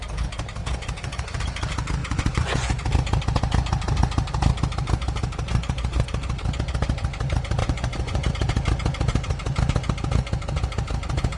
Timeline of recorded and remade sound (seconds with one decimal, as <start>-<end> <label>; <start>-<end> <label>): 0.0-0.6 recorded; 0.6-1.4 remade; 1.4-2.0 recorded; 2.0-2.9 remade; 2.9-5.5 recorded; 5.5-6.1 remade; 6.1-7.6 recorded; 7.6-8.3 remade; 8.3-11.4 recorded